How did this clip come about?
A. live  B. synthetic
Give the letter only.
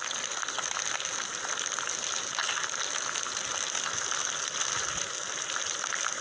A